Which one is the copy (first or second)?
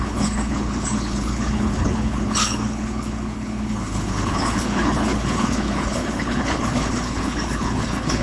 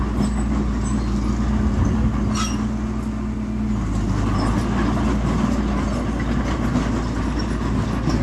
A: first